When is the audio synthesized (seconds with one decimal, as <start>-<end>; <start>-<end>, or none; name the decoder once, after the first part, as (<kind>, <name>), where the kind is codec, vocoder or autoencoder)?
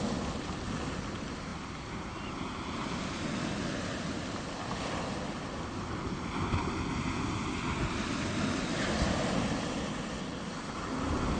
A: none